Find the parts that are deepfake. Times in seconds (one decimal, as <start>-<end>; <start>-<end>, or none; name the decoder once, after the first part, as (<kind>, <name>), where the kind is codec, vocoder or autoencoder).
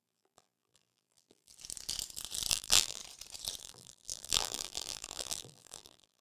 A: 0.0-1.5 (vocoder, BigVGAN v2); 2.5-3.0; 3.6-6.2